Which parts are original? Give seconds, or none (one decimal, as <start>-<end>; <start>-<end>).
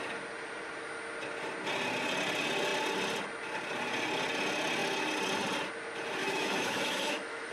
0.0-6.2